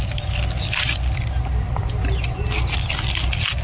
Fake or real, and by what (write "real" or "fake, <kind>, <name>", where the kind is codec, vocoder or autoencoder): real